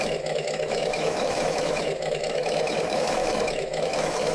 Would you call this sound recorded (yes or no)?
no